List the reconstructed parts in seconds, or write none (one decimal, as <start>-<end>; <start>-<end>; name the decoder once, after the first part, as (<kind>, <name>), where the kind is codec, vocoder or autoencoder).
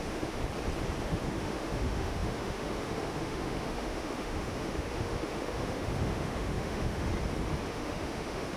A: 0.0-0.4 (autoencoder, DAC-VAE); 1.0-7.1; 7.7-8.6